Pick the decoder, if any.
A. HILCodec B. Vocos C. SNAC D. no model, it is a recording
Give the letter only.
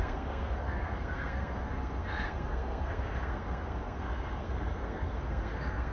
C